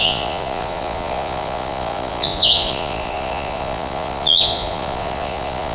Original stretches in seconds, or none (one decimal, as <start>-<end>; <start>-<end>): none

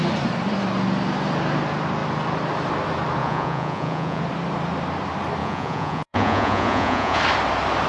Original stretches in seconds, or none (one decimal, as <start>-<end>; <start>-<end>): 0.0-3.2; 4.2-5.4; 7.2-7.9

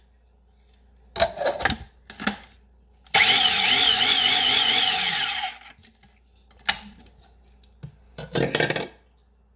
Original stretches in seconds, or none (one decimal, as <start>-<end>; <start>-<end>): 0.0-3.9; 5.2-9.6

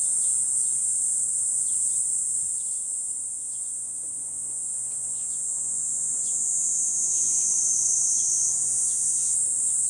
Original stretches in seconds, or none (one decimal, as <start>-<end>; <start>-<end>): 0.0-3.2; 7.5-8.6; 9.3-9.9

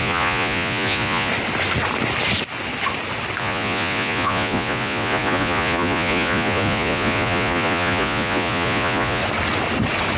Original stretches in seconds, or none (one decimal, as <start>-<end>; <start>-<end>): 1.3-3.4; 9.2-10.2

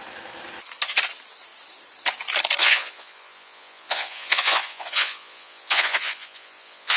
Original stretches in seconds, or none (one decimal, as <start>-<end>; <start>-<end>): 0.0-2.6

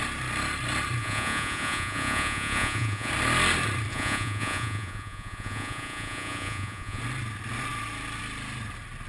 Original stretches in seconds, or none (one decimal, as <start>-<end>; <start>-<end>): 0.0-1.0; 3.1-3.9; 7.0-9.1

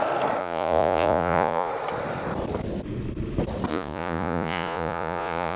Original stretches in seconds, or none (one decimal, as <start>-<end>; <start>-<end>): 0.0-0.4; 1.7-3.7